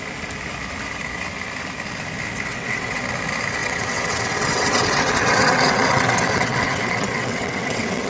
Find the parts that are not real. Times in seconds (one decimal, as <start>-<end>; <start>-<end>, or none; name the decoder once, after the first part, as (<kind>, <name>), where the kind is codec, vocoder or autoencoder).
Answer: 2.5-3.0 (vocoder, WaveNeXt); 3.6-8.1